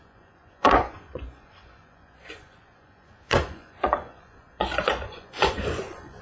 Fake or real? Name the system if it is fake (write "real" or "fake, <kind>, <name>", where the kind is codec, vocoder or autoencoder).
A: fake, vocoder, Vocos